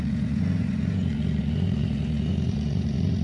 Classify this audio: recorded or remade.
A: remade